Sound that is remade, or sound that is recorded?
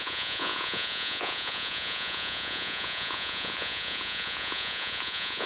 remade